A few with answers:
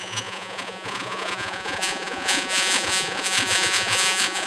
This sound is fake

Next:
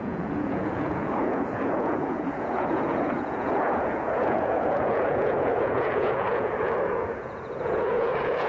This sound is fake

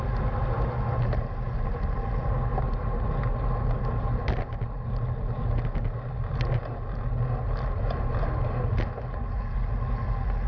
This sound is real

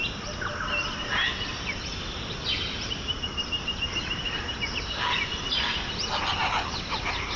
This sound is real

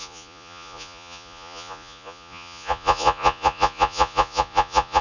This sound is fake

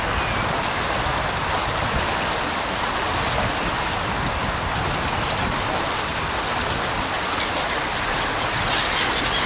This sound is real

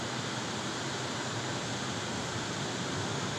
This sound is real